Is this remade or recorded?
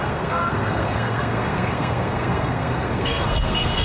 remade